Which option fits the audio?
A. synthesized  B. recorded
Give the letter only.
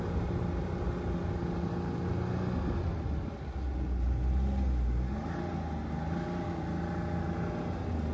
B